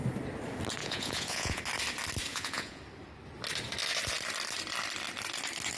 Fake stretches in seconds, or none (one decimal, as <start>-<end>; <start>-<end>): 0.8-1.6; 2.3-2.8